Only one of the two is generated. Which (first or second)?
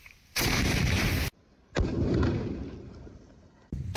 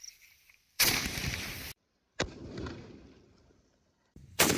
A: second